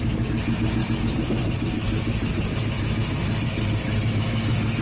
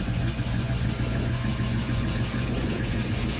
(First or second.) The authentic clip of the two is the first